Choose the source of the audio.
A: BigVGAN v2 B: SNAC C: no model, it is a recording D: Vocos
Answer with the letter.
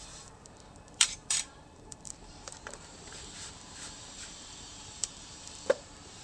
A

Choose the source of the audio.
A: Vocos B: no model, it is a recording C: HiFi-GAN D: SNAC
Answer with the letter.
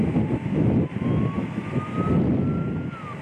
B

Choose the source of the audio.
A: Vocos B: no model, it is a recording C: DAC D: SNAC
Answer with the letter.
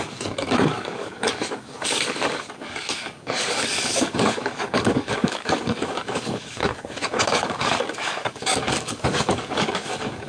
C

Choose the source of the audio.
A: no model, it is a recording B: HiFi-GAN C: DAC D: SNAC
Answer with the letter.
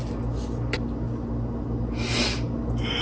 A